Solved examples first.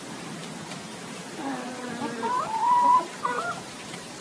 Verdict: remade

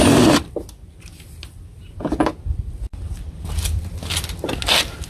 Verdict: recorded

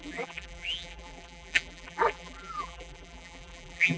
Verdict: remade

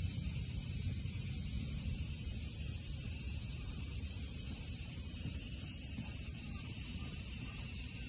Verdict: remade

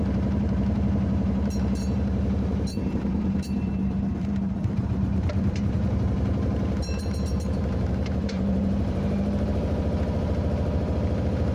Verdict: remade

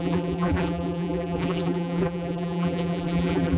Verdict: remade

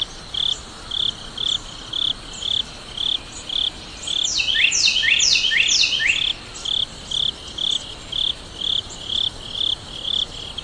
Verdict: recorded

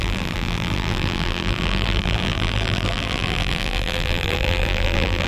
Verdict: remade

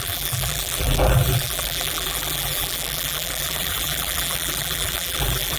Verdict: remade